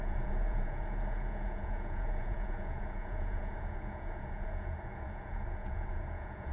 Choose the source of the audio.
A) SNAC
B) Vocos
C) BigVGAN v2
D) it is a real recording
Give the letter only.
B